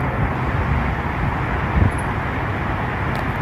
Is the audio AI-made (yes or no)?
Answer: no